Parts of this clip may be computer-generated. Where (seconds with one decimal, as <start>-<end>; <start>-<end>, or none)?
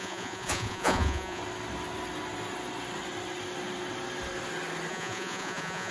0.0-1.4; 4.9-5.9